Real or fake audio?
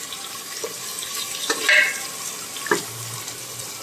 real